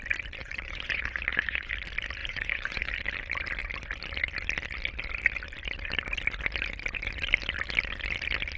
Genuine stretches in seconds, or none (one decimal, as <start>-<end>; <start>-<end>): 0.0-0.4; 1.7-2.2; 2.9-8.6